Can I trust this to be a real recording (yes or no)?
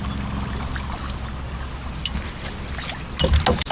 yes